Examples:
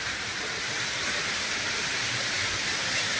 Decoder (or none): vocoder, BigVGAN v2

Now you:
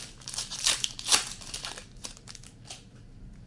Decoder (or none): vocoder, BigVGAN v2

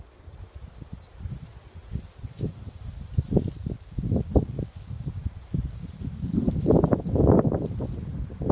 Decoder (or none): none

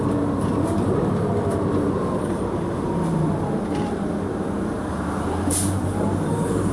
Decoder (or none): vocoder, BigVGAN v2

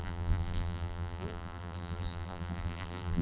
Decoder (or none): vocoder, BigVGAN v2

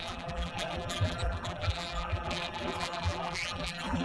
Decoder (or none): vocoder, BigVGAN v2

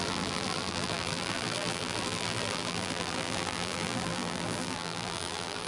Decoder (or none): vocoder, BigVGAN v2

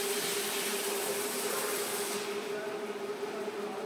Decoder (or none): none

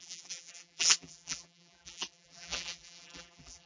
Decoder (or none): vocoder, BigVGAN v2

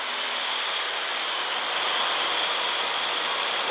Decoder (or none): none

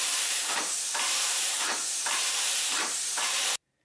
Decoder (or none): vocoder, BigVGAN v2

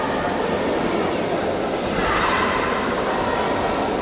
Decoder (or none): none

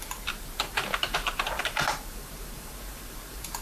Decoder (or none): vocoder, BigVGAN v2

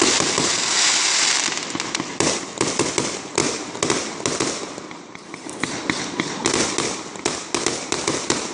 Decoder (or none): none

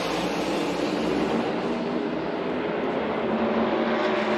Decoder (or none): none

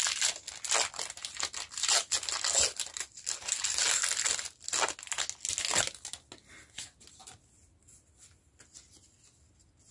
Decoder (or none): none